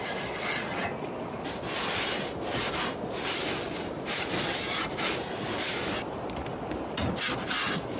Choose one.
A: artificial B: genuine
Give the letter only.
B